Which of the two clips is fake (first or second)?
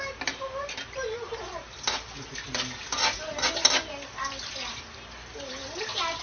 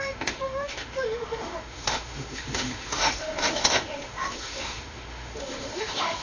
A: second